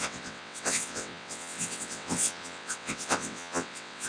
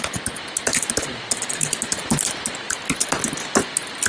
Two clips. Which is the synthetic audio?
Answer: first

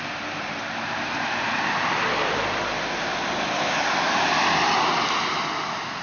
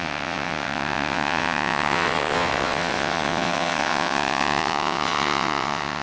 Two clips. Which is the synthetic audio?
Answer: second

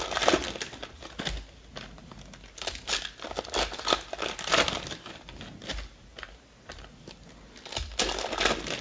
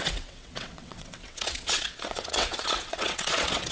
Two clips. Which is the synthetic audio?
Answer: second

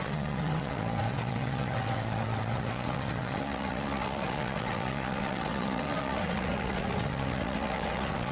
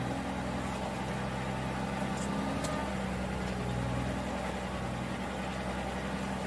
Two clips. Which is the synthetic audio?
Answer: first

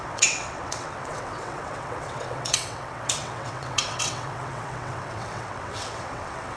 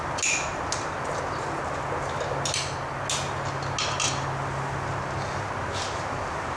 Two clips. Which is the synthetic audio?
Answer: first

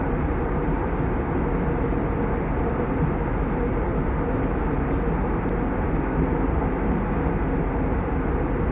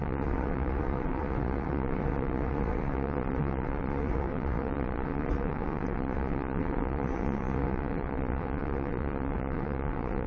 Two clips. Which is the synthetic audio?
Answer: second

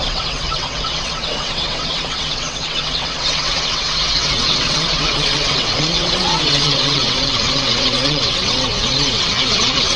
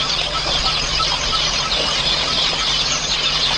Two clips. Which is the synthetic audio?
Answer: first